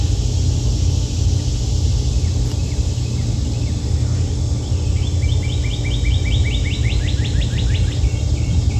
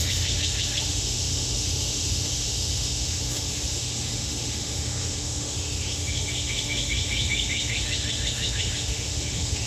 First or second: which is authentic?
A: first